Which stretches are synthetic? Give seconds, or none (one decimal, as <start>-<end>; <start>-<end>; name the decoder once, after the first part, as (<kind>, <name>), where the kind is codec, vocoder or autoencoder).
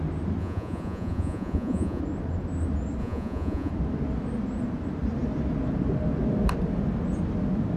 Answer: 0.4-2.0 (vocoder, Vocos); 3.0-3.7